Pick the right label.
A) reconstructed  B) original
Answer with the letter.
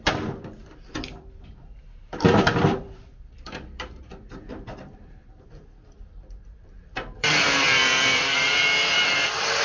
A